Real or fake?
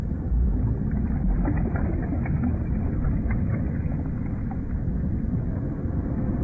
real